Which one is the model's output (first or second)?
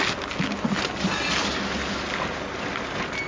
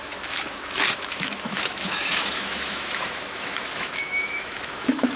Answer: second